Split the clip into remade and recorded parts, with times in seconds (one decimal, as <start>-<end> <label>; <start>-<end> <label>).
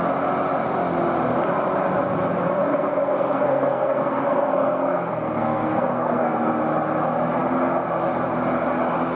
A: 0.0-2.7 recorded; 2.7-6.5 remade; 6.5-9.2 recorded